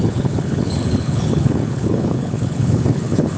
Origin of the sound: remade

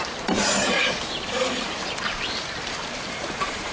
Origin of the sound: remade